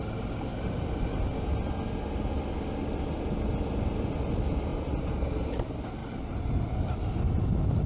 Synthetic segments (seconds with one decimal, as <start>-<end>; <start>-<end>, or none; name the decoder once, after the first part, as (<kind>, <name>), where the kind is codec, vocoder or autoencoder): none